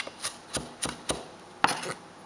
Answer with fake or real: real